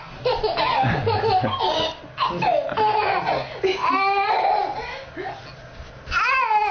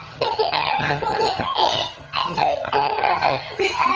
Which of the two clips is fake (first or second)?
second